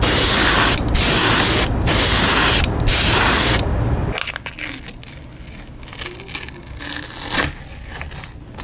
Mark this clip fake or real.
real